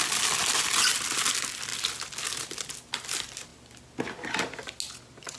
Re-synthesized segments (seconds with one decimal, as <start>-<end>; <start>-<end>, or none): none